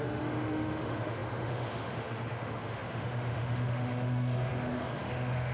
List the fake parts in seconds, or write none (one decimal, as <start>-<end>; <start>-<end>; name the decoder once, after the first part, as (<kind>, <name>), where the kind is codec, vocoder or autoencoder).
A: 0.0-5.5 (autoencoder, DAC-VAE)